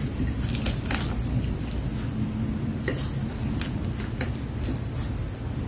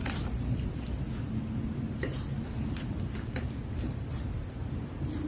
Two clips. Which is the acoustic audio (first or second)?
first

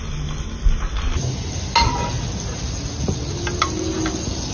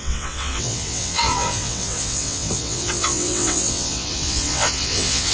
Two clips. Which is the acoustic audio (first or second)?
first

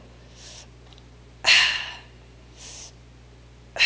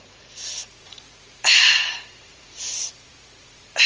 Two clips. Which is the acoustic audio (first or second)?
first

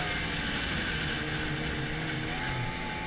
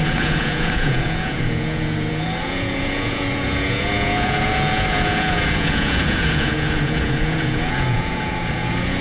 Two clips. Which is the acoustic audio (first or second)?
first